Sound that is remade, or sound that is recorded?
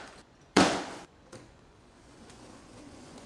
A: remade